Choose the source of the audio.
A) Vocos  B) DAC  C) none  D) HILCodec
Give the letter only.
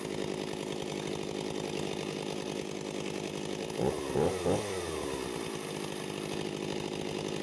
C